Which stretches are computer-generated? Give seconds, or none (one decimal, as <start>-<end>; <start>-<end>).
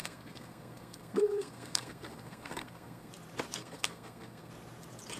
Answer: 0.0-3.1; 3.6-4.5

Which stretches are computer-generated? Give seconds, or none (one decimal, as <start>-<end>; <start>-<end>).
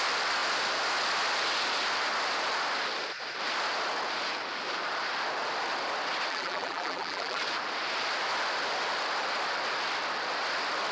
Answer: 6.3-7.4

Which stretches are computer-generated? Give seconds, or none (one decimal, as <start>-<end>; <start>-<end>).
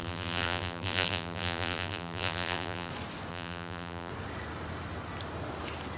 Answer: 0.0-2.9; 3.3-4.1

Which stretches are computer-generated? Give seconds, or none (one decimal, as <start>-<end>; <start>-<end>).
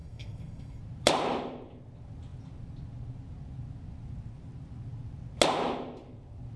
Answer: 0.0-0.8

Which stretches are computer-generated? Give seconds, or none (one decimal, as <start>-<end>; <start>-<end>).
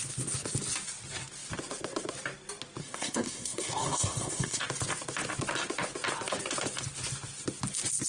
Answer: 2.8-4.6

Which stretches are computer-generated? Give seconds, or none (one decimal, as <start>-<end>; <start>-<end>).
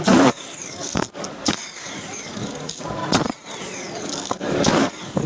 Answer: 0.0-3.0; 3.6-5.3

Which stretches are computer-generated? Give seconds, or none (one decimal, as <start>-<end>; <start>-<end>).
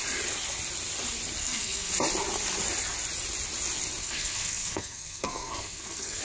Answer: 1.4-1.9; 4.0-6.2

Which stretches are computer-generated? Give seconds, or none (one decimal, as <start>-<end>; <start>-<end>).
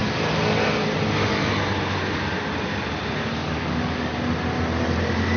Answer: 3.4-4.1